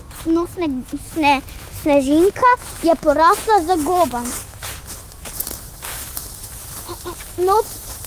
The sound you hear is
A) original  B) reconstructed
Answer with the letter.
B